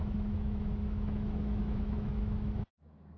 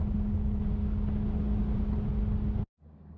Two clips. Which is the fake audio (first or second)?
first